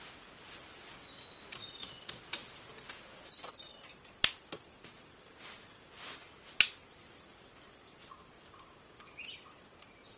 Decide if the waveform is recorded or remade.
recorded